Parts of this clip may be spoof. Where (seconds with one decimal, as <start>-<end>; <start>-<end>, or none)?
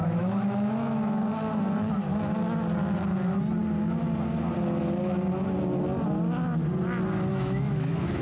0.0-1.3; 7.3-8.2